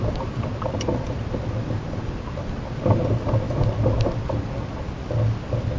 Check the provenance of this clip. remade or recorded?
recorded